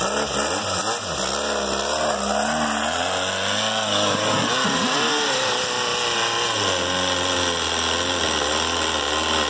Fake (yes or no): no